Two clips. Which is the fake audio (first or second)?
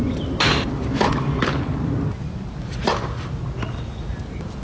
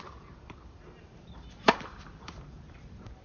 second